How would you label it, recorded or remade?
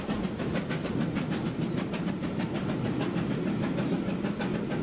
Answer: recorded